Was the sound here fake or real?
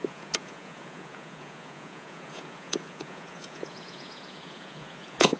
fake